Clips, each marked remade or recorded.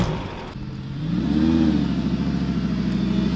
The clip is recorded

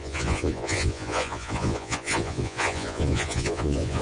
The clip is remade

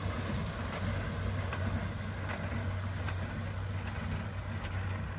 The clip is recorded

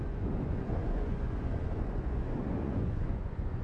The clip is remade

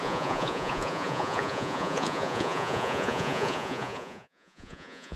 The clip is remade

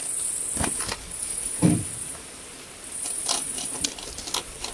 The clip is recorded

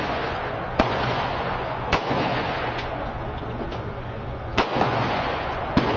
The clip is remade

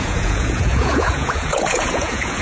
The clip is remade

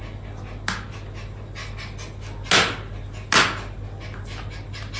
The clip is recorded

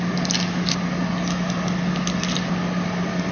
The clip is recorded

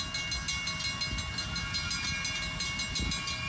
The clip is recorded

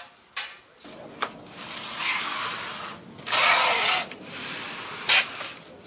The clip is recorded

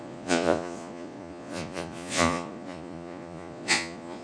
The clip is remade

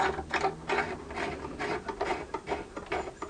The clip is recorded